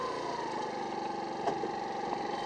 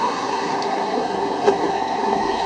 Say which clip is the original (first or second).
first